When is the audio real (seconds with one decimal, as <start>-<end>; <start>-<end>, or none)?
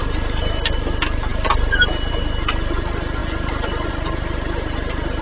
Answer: 0.0-5.2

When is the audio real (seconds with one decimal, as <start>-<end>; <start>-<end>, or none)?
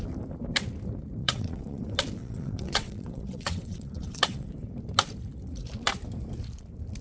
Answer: 0.0-1.2; 1.8-2.2; 4.5-7.0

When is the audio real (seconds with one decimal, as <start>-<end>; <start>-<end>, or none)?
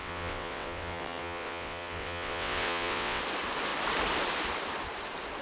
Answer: 3.2-5.4